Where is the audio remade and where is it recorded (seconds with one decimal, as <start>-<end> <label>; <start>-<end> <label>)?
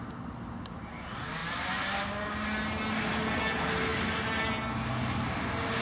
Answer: 0.0-5.8 recorded